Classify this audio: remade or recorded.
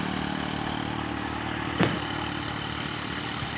recorded